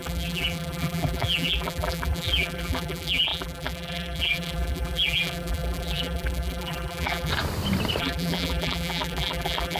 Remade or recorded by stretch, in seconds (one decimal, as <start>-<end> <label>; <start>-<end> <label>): 0.0-7.3 remade; 7.3-8.0 recorded; 8.0-9.8 remade